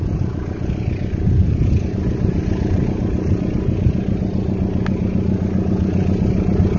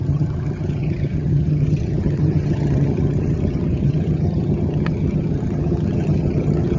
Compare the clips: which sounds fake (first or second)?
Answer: second